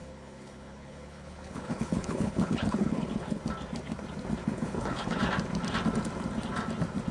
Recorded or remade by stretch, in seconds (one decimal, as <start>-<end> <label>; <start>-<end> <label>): 0.0-3.4 remade; 3.4-4.4 recorded; 4.4-5.2 remade; 5.2-7.1 recorded